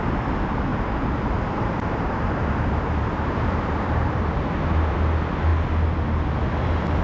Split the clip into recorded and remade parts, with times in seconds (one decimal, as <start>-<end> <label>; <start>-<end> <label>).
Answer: 0.0-0.7 recorded; 0.7-4.3 remade; 4.3-7.0 recorded